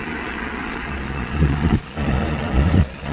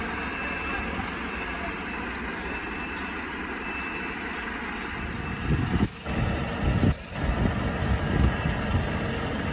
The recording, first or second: second